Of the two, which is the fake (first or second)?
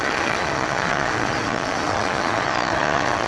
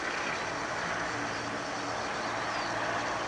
first